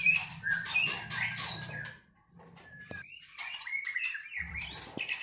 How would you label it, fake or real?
fake